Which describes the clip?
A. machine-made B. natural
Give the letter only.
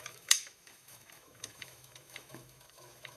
A